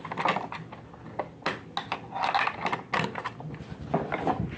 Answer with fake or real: real